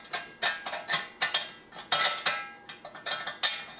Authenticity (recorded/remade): recorded